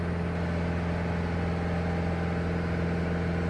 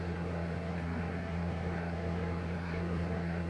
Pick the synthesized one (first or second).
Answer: second